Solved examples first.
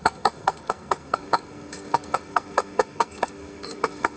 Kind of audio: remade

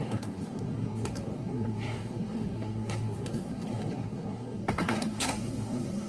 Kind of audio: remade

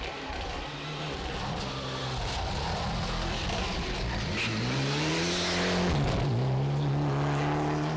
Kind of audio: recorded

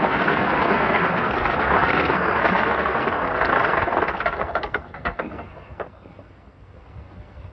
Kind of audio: remade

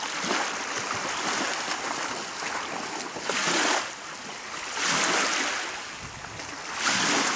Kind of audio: recorded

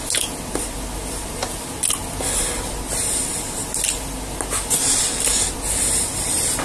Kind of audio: recorded